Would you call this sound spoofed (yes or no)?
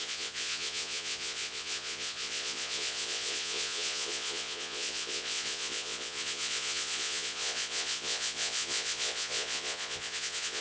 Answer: yes